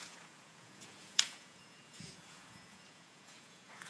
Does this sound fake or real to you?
fake